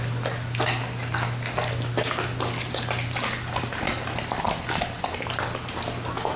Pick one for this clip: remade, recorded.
recorded